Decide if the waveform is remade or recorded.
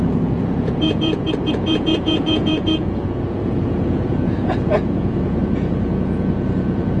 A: remade